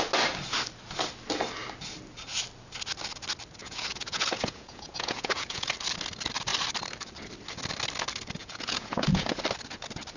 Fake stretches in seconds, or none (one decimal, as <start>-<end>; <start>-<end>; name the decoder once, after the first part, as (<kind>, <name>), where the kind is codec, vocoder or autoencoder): 3.6-5.7 (vocoder, Vocos); 8.4-9.4